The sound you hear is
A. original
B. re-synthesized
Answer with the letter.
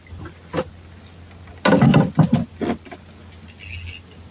A